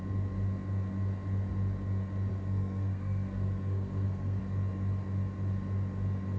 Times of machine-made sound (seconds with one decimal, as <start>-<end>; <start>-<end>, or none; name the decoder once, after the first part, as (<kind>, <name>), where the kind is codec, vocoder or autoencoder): 2.3-4.4 (codec, SNAC)